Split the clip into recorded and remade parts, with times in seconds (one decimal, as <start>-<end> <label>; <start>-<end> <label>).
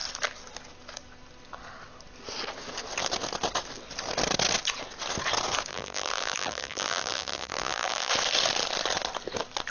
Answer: 0.0-5.7 recorded; 5.7-8.1 remade; 8.1-9.7 recorded